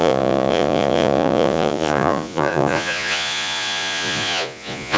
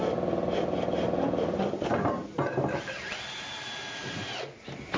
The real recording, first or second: second